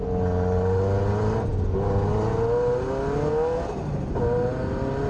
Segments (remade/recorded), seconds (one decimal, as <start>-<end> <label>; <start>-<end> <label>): 0.0-5.1 recorded